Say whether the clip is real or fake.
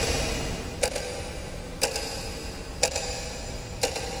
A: real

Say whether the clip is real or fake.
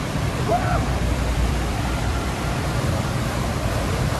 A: fake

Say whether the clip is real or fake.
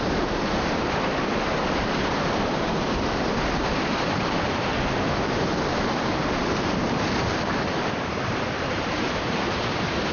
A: fake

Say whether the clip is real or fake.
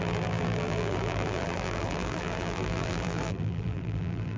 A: fake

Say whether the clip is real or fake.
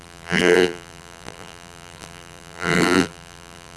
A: fake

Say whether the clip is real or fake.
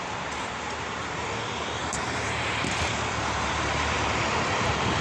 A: fake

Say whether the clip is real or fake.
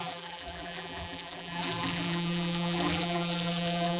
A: fake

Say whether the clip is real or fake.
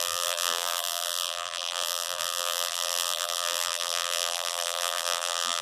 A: fake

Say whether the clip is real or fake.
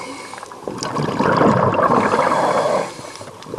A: real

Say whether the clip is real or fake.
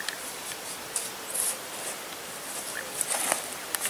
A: fake